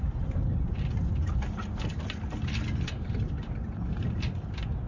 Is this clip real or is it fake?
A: real